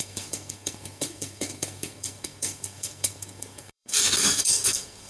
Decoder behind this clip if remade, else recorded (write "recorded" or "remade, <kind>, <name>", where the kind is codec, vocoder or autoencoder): remade, codec, SNAC